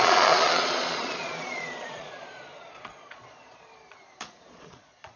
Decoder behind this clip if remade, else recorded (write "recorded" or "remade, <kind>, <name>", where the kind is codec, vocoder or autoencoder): remade, vocoder, Vocos